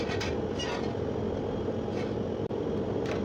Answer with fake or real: real